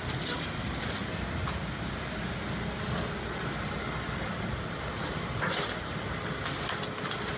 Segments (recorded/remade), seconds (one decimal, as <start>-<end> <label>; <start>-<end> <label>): 0.0-7.4 recorded